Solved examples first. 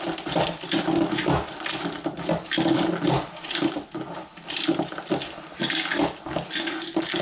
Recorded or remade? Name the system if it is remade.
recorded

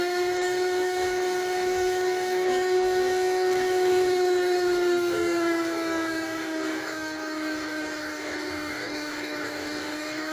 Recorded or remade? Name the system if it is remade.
remade, codec, DAC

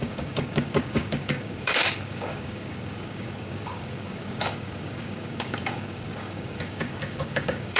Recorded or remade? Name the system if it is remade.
remade, codec, DAC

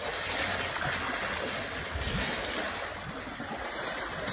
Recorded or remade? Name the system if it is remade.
recorded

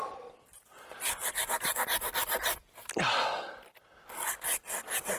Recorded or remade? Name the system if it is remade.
recorded